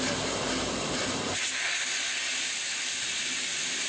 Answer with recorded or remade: recorded